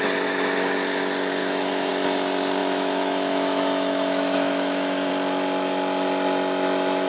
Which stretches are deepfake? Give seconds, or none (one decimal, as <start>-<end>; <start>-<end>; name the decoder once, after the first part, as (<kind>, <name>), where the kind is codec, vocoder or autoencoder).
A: 1.4-1.9 (autoencoder, DAC-VAE); 2.6-5.1